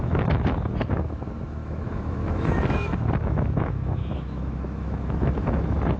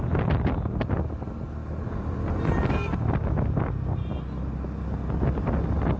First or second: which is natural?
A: second